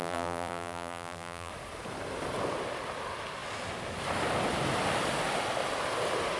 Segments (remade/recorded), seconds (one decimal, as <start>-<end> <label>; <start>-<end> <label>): 0.0-1.5 remade; 1.5-6.4 recorded